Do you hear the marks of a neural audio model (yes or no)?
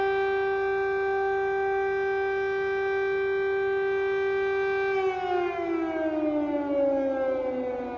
no